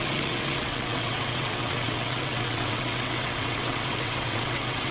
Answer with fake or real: fake